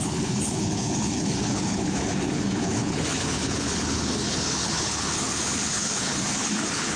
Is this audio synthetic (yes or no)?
yes